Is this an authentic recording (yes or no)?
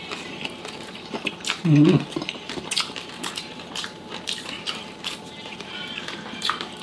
no